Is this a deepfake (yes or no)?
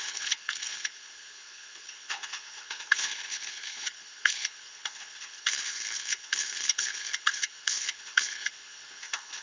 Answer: yes